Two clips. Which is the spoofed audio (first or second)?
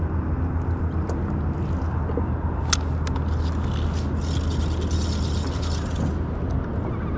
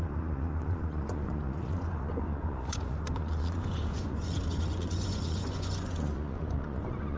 second